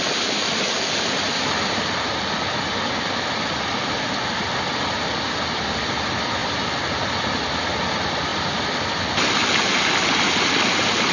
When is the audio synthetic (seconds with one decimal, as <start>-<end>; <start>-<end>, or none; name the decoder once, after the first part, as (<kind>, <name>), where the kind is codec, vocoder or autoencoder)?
none